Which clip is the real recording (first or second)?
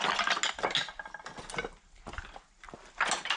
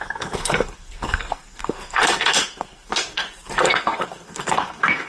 first